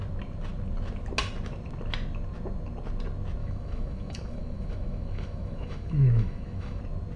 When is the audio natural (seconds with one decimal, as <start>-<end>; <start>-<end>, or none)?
0.0-3.4; 6.8-7.2